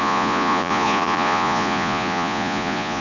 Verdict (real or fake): fake